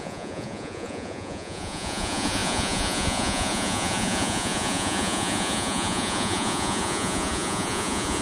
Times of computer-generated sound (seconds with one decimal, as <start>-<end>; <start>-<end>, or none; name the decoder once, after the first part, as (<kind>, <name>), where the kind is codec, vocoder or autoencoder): 0.0-8.2 (vocoder, Vocos)